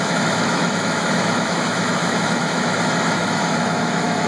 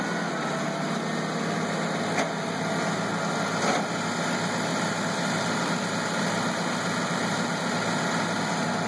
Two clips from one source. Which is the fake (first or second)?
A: first